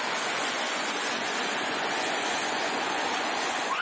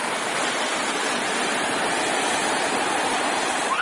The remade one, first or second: first